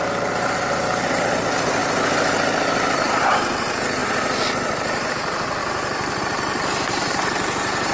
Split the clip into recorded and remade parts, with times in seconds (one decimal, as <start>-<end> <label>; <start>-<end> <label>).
0.0-1.8 remade; 1.8-3.3 recorded; 3.3-7.9 remade